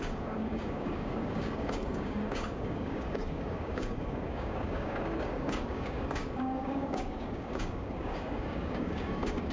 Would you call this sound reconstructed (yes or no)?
yes